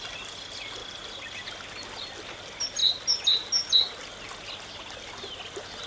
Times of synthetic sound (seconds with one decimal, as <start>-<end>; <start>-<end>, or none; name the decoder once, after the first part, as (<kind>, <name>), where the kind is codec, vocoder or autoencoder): none

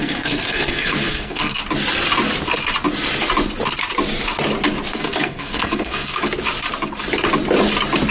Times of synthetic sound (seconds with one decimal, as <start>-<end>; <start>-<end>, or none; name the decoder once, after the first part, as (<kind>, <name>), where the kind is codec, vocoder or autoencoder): 0.0-1.6 (codec, SNAC); 4.9-6.2

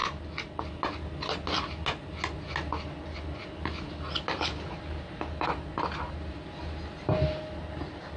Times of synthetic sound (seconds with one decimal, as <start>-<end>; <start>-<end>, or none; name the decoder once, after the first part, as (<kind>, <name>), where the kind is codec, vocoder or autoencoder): none

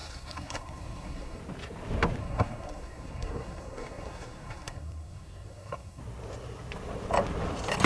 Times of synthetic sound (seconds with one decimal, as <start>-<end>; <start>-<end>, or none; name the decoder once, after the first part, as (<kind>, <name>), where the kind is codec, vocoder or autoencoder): 0.0-1.4 (codec, SNAC); 2.2-6.0

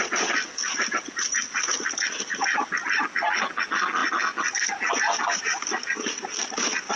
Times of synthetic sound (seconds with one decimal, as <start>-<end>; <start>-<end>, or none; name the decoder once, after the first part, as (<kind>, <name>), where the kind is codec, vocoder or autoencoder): none

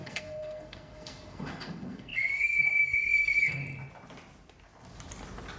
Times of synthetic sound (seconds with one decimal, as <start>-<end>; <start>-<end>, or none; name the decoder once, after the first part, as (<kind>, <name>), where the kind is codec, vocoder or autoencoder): 0.0-3.6 (codec, SNAC)

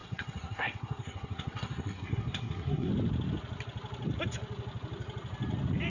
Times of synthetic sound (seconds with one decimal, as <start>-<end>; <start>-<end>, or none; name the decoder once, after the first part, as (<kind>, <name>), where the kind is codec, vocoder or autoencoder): 0.0-2.9 (codec, SNAC)

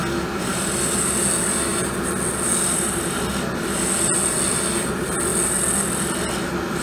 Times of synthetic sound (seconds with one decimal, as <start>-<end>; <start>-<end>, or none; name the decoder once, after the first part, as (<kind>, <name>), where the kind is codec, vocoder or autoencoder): none